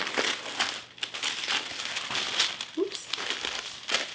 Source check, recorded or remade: recorded